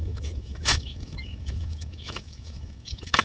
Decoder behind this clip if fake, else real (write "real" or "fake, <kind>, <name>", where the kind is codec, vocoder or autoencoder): fake, autoencoder, DAC-VAE